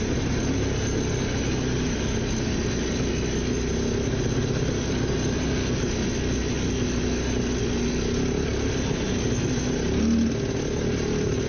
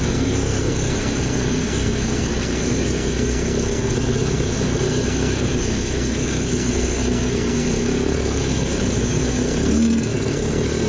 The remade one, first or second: second